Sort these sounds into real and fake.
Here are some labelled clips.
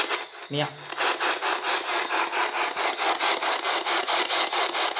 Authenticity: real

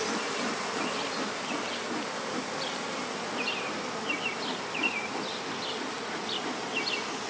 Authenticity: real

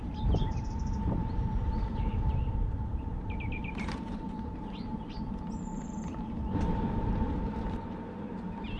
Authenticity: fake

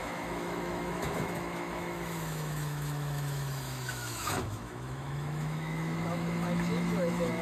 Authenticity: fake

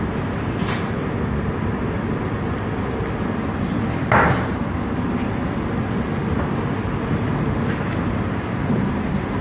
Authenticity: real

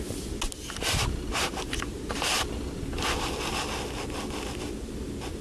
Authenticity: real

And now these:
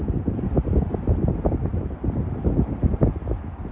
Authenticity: real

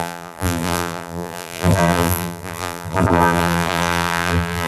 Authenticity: fake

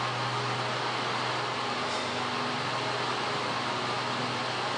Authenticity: real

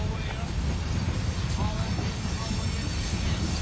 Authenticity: real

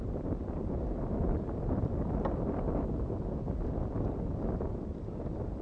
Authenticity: real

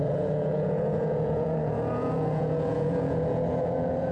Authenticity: fake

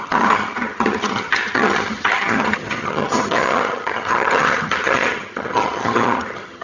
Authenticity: fake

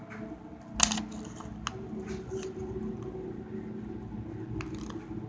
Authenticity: real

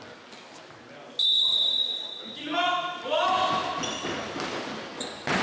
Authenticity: real